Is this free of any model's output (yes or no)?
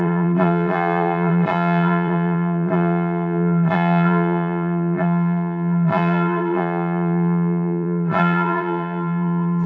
no